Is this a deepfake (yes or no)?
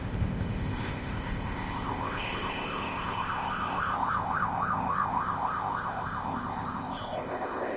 yes